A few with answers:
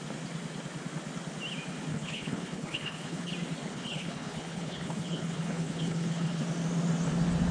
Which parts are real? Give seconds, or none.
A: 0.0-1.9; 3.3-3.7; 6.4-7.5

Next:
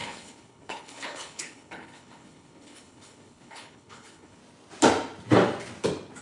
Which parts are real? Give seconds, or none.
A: 4.4-6.2

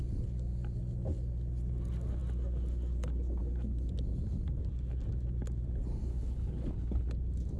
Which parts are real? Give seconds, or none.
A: 0.0-6.1; 7.1-7.6

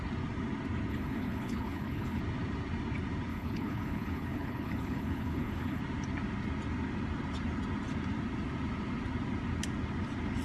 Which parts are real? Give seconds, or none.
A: 0.0-0.9; 2.2-3.3; 5.8-10.4

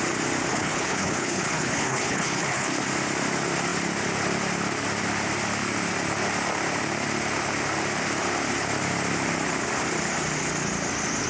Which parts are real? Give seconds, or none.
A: 0.0-0.5; 2.8-11.3

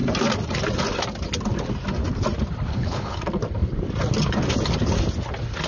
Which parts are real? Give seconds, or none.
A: 0.0-2.7; 3.2-5.7

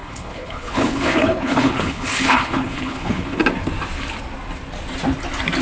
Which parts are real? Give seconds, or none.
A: 3.4-5.6

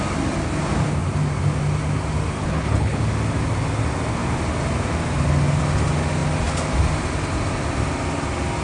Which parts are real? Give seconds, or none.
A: 0.0-2.4; 3.0-8.6